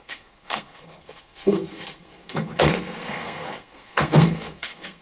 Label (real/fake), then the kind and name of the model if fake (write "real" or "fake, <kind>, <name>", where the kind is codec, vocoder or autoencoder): fake, codec, SNAC